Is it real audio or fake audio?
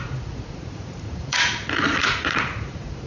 fake